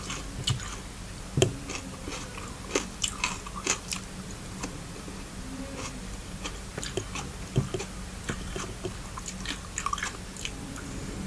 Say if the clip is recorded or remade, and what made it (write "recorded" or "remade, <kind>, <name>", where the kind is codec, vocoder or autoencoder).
recorded